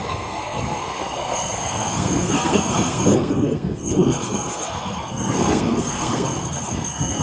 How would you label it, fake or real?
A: fake